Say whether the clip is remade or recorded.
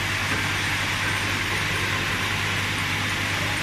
recorded